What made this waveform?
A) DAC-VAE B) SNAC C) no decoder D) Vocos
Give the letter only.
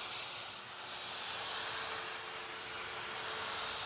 C